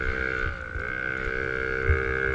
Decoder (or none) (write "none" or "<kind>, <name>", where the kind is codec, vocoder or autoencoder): none